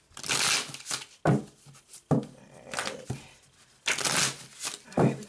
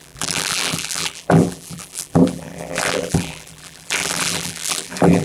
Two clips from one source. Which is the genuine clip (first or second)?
first